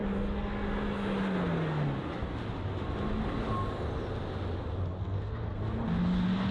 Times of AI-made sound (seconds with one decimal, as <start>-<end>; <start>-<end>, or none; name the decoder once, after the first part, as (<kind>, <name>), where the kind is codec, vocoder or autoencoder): 5.0-5.6 (codec, SNAC)